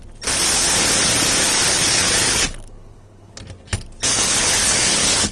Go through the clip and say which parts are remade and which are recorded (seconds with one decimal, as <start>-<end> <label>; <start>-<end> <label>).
0.0-1.7 recorded; 1.7-3.3 remade; 3.3-4.1 recorded; 4.1-5.3 remade